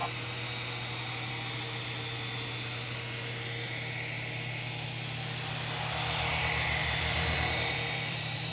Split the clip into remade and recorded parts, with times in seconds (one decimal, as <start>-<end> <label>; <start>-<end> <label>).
0.0-6.8 recorded; 6.8-8.5 remade